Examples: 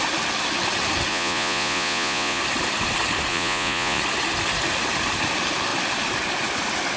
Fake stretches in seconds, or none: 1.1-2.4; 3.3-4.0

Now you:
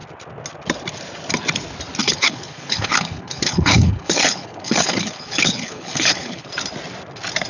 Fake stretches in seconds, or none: 2.0-6.5

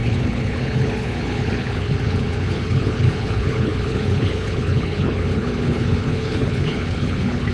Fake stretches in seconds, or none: 0.0-7.5

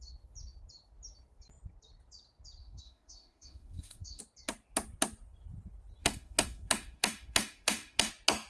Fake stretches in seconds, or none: 2.6-4.2; 6.0-8.1

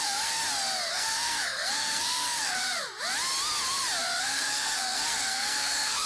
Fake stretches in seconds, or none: 0.0-0.4; 0.9-2.6; 4.2-6.1

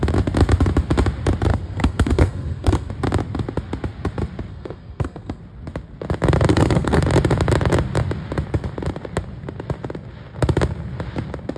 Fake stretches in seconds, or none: 1.5-2.9; 4.5-5.4; 6.5-7.0